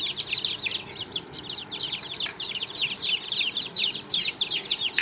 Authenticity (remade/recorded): remade